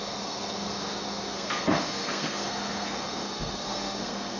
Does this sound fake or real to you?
fake